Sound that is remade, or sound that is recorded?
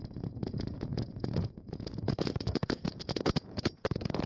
remade